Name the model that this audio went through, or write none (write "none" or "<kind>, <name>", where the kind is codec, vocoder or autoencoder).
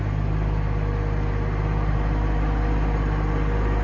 none